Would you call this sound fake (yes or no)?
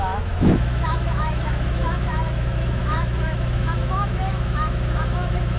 yes